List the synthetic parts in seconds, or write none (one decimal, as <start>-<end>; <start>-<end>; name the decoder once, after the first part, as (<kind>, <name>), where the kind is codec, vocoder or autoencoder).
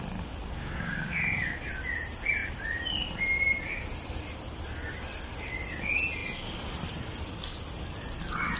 0.4-1.6 (codec, DAC)